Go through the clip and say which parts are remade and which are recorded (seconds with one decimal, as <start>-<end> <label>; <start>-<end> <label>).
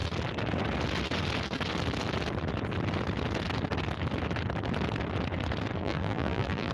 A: 0.0-5.8 recorded; 5.8-6.7 remade